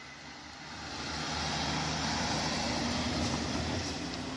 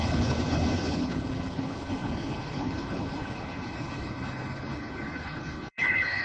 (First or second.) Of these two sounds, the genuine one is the first